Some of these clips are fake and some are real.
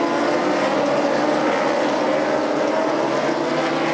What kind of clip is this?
real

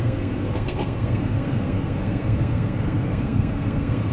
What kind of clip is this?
fake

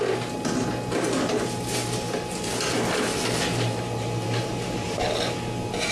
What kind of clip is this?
real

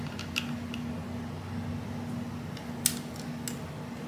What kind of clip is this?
real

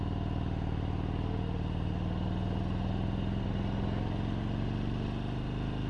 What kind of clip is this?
real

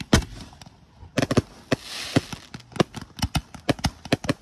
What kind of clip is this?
real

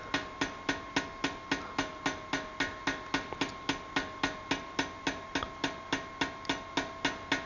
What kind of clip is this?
real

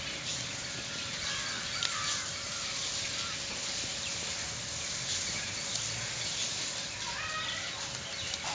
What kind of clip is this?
real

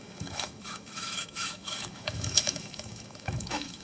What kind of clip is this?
fake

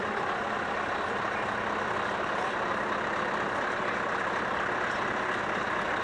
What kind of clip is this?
real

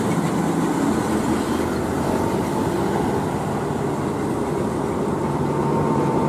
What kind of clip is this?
real